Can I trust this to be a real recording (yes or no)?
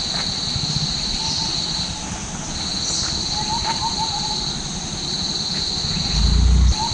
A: yes